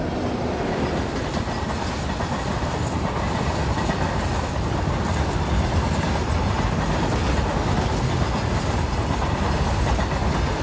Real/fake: real